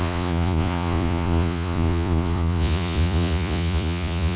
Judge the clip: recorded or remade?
remade